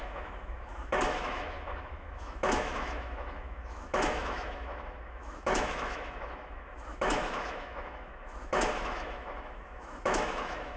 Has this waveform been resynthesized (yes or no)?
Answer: yes